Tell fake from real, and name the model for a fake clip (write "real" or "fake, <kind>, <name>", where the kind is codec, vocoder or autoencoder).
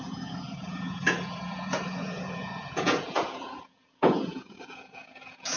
fake, vocoder, Vocos